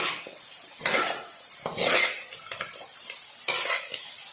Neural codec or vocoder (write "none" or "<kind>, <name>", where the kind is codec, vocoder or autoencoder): none